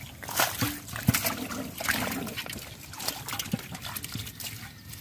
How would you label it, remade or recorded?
recorded